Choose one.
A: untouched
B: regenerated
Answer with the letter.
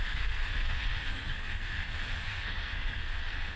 B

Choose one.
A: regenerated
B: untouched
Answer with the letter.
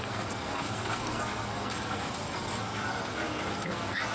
A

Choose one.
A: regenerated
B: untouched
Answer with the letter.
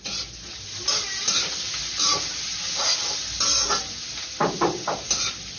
B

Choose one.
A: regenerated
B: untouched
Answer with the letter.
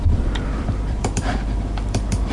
A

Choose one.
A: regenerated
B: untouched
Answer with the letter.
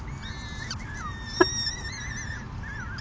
B